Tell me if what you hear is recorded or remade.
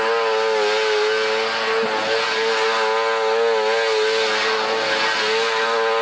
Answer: recorded